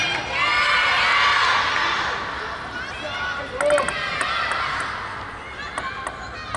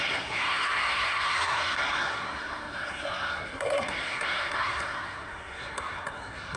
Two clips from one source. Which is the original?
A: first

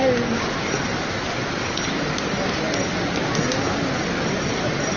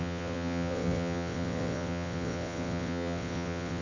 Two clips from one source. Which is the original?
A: first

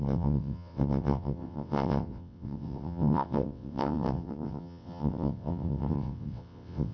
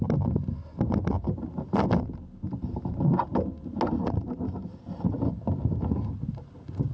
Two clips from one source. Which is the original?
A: second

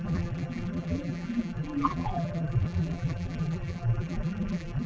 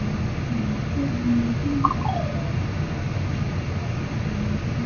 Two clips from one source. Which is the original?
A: second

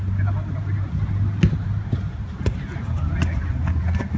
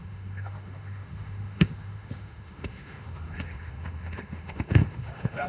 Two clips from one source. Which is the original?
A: first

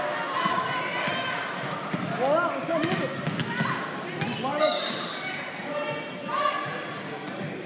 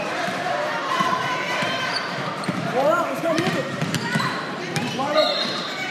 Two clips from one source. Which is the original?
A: first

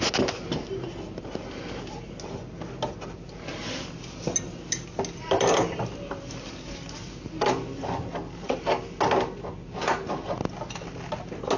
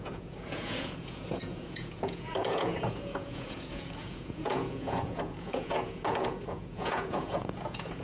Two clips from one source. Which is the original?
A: first